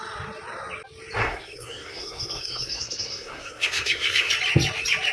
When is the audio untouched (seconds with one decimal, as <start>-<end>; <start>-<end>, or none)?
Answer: 0.0-1.2; 4.3-5.1